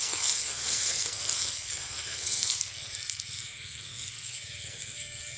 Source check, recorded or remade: remade